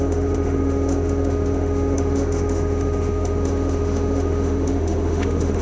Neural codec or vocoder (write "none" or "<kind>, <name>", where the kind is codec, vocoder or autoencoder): autoencoder, DAC-VAE